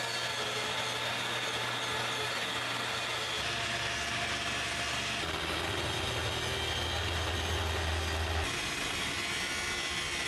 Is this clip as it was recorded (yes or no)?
yes